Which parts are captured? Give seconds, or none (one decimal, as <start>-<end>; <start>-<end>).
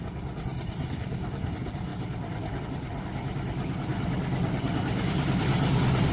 0.0-6.1